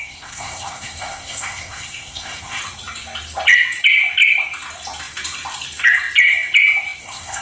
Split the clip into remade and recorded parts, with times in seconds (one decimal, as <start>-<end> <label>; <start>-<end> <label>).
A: 0.0-2.6 remade; 2.6-7.0 recorded; 7.0-7.4 remade